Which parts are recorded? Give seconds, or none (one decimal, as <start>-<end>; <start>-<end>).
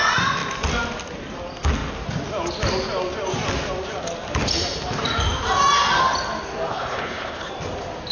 0.0-6.7; 7.5-8.1